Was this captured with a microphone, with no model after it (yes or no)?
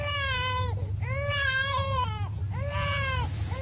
yes